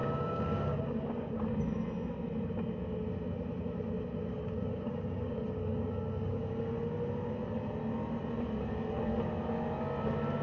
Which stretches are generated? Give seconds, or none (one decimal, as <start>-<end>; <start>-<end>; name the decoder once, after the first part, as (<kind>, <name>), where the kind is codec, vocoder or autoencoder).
0.0-1.3 (codec, DAC); 4.3-6.5